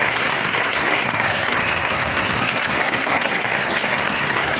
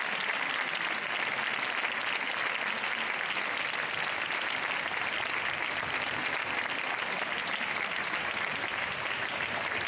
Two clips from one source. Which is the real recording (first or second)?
second